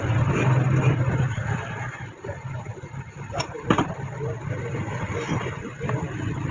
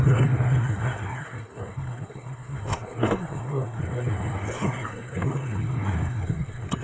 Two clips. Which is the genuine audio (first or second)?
first